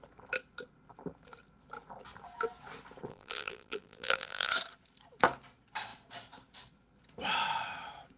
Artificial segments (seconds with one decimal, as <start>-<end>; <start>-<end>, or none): 3.1-4.5